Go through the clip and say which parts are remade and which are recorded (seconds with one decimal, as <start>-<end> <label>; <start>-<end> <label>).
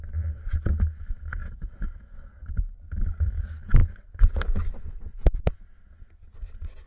0.0-1.4 recorded; 1.4-2.3 remade; 2.3-6.9 recorded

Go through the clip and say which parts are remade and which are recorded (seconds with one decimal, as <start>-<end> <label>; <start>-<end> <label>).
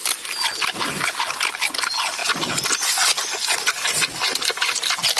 0.0-5.2 recorded